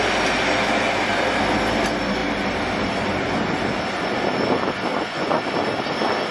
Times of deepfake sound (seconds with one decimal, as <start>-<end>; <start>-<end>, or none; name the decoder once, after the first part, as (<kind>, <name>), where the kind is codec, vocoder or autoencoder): 4.9-5.4 (vocoder, Vocos)